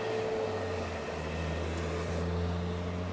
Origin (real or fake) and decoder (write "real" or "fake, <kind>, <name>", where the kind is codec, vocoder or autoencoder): real